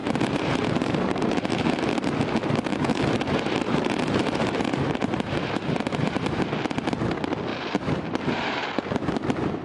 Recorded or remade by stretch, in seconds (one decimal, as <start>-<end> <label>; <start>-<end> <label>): 0.0-1.5 remade; 1.5-2.7 recorded; 2.7-6.5 remade; 6.5-7.5 recorded; 7.5-9.1 remade; 9.1-9.6 recorded